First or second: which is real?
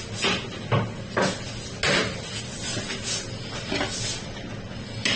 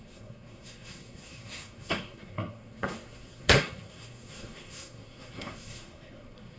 first